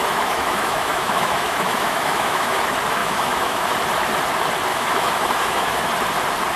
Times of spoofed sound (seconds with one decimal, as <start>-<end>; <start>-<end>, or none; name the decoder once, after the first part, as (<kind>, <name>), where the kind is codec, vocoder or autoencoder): 0.0-2.6 (autoencoder, DAC-VAE); 3.0-3.7; 4.7-5.9

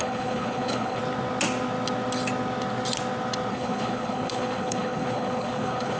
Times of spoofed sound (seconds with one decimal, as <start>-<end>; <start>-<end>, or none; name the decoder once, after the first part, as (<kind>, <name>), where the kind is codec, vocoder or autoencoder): 0.0-1.0 (codec, HILCodec); 3.5-6.0

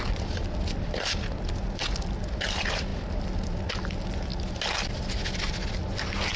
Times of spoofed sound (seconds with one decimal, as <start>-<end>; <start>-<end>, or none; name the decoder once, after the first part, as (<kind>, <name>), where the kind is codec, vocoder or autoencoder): none

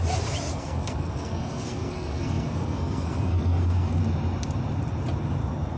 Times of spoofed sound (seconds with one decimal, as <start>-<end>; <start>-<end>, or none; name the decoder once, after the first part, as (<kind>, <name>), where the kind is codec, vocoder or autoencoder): 0.5-4.0 (codec, SNAC)

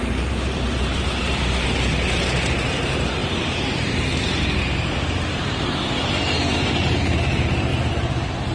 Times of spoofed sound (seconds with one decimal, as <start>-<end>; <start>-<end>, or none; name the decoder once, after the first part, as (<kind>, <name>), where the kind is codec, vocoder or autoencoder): 0.0-8.5 (vocoder, BigVGAN v2)